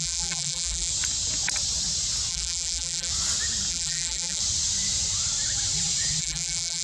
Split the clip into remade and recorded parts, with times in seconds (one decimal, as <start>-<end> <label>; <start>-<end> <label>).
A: 0.0-0.9 remade; 0.9-2.3 recorded; 2.3-3.1 remade; 3.1-3.7 recorded; 3.7-4.4 remade; 4.4-6.2 recorded; 6.2-6.8 remade